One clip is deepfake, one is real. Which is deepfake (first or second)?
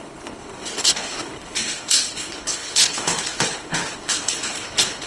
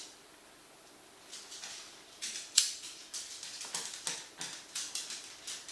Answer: first